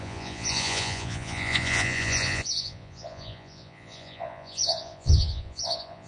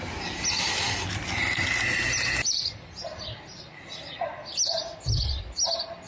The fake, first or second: first